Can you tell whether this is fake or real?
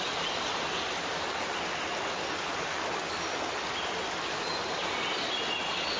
real